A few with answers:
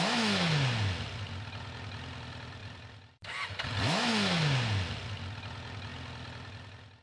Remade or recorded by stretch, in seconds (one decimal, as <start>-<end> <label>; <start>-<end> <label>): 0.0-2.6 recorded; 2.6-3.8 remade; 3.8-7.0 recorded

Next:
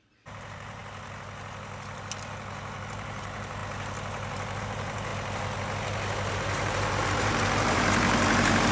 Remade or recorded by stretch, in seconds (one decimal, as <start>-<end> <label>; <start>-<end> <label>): 0.0-0.8 remade; 0.8-2.9 recorded; 2.9-3.6 remade; 3.6-4.6 recorded; 4.6-5.1 remade; 5.1-6.3 recorded; 6.3-8.7 remade

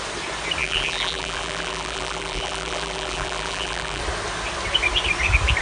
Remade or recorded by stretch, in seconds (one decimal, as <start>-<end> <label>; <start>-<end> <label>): 0.0-0.6 recorded; 0.6-4.0 remade; 4.0-5.6 recorded